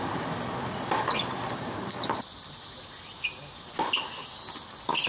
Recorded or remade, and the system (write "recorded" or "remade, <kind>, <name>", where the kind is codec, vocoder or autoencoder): recorded